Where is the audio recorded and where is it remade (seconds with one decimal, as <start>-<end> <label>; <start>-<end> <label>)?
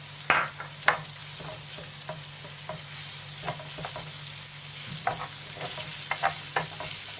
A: 0.0-7.2 recorded